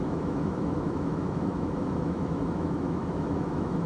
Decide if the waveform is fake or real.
fake